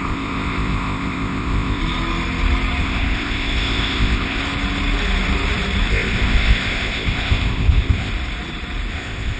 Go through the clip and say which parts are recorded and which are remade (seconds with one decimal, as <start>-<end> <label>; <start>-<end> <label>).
0.0-1.8 remade; 1.8-2.8 recorded; 2.8-4.4 remade; 4.4-5.9 recorded; 5.9-8.1 remade; 8.1-8.9 recorded; 8.9-9.4 remade